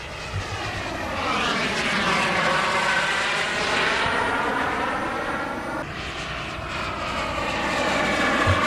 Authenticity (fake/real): real